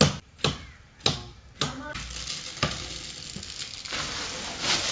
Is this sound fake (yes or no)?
no